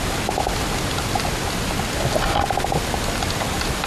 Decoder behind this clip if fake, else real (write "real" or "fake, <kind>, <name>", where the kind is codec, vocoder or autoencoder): real